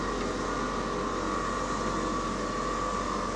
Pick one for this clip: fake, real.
real